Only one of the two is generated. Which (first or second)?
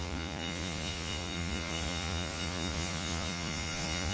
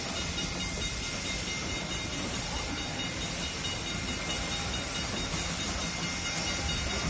first